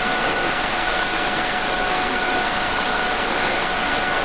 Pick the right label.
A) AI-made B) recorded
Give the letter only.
A